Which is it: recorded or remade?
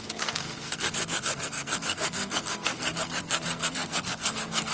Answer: remade